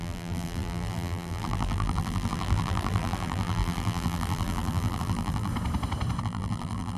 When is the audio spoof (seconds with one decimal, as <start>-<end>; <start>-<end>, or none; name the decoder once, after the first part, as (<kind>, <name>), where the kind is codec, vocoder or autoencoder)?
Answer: 0.0-5.5 (vocoder, BigVGAN v2); 6.2-7.0